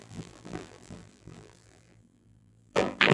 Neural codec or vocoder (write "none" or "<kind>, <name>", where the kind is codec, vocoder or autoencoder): vocoder, BigVGAN v2